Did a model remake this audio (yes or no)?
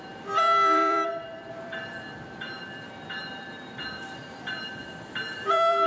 yes